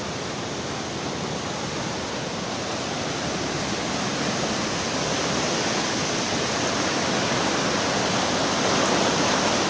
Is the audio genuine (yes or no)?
yes